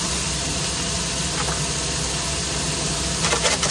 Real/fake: real